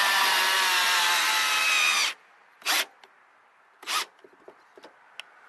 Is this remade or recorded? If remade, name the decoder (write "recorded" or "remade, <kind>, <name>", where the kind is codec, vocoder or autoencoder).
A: recorded